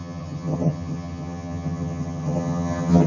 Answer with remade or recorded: remade